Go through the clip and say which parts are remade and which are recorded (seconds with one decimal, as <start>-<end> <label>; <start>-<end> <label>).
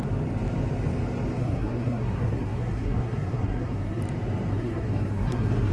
0.0-1.4 recorded; 1.4-4.0 remade; 4.0-4.5 recorded; 4.5-5.7 remade